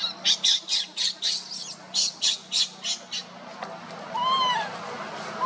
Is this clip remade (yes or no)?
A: no